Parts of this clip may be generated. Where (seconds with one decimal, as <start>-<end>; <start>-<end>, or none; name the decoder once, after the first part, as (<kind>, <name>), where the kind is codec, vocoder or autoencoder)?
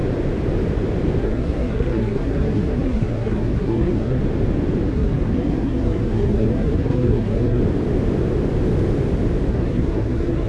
1.2-4.2 (codec, SNAC); 4.9-7.6; 9.5-10.5